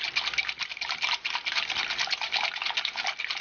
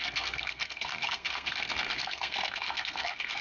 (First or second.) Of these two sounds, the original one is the first